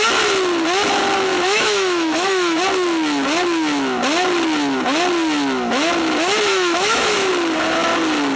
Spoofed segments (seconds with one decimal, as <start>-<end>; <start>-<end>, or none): 1.3-2.6; 6.5-7.3

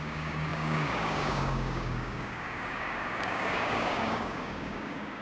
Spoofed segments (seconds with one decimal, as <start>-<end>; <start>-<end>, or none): 0.0-5.2

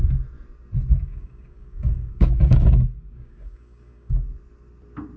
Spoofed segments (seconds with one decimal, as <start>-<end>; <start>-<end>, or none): 1.0-4.1

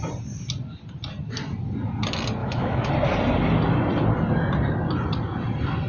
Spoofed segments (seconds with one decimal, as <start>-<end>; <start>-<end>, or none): 2.4-2.9

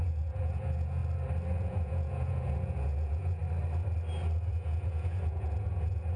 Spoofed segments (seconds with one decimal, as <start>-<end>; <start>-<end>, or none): 0.0-1.0; 1.5-3.4; 4.5-6.2

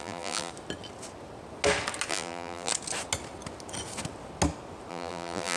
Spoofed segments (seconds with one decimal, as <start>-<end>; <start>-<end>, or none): 0.0-0.5; 2.1-2.7; 4.9-5.6